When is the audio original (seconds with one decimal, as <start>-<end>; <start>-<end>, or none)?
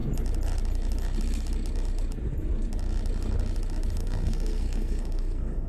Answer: 0.0-4.0